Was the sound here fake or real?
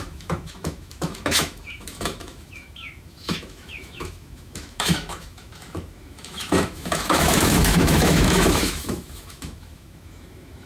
fake